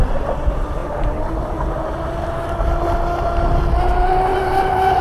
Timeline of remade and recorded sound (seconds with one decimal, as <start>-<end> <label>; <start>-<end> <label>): 0.0-4.3 recorded; 4.3-5.0 remade